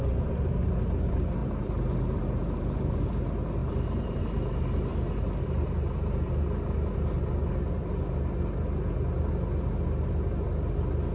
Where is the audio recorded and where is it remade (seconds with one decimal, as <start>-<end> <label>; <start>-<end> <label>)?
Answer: 0.0-1.4 recorded; 1.4-3.1 remade; 3.1-3.6 recorded; 3.6-4.2 remade; 4.2-11.1 recorded